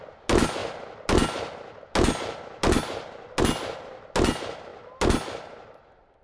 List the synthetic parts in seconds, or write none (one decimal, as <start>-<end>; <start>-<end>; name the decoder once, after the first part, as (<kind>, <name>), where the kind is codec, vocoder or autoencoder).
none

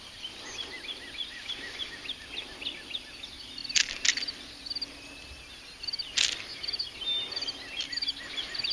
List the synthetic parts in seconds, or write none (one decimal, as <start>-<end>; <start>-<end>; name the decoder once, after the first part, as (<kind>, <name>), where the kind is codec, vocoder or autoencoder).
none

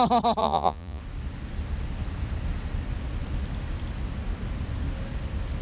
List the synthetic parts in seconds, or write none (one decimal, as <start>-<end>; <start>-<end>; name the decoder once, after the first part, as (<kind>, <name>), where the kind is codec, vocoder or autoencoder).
0.4-1.0 (vocoder, Vocos)